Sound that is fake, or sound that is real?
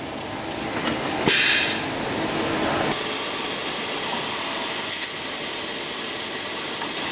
real